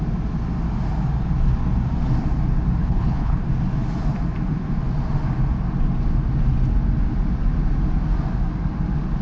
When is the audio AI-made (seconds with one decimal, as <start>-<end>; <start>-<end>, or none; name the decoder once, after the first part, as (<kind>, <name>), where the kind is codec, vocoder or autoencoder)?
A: 2.8-3.4 (codec, HILCodec)

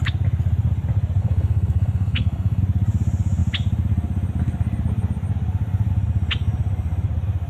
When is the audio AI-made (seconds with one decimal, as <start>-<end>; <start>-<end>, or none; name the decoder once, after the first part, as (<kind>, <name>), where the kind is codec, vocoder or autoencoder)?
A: 1.2-2.6 (codec, SNAC)

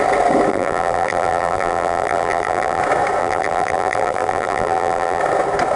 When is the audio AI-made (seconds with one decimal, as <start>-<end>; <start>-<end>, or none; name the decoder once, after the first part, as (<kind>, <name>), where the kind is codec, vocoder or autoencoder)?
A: 0.5-2.8 (vocoder, BigVGAN v2); 3.2-5.2

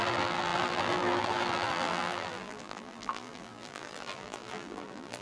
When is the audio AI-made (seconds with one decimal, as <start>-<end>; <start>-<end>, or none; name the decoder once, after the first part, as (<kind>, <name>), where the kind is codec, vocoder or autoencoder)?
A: 0.0-5.2 (vocoder, BigVGAN v2)